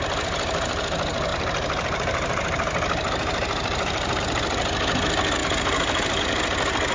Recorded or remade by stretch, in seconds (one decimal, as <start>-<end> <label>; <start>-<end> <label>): 0.0-1.3 recorded; 1.3-4.2 remade; 4.2-5.4 recorded; 5.4-6.2 remade; 6.2-6.9 recorded

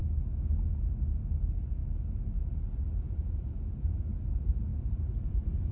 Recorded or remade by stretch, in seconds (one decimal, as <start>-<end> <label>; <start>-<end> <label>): 0.0-1.4 recorded; 1.4-1.8 remade; 1.8-2.8 recorded; 2.8-5.7 remade

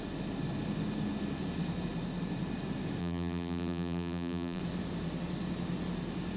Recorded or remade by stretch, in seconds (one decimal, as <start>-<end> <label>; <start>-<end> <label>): 0.0-3.0 recorded; 3.0-4.6 remade; 4.6-6.4 recorded

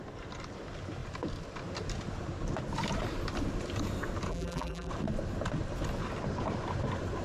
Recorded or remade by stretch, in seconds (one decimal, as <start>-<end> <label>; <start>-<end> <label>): 0.0-4.3 recorded; 4.3-4.9 remade; 4.9-7.2 recorded